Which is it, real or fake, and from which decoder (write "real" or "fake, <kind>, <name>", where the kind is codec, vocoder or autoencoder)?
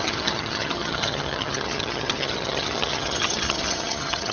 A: fake, vocoder, HiFi-GAN